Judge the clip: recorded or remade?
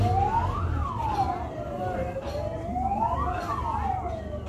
recorded